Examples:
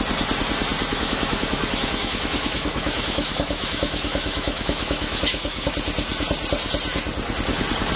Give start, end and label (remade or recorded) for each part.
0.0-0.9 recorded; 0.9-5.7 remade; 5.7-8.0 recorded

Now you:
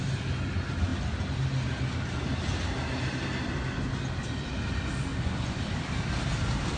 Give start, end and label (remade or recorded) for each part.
0.0-5.1 recorded; 5.1-5.6 remade; 5.6-6.8 recorded

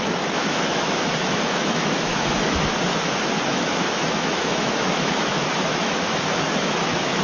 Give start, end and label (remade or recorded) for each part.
0.0-2.7 remade; 2.7-3.5 recorded; 3.5-7.2 remade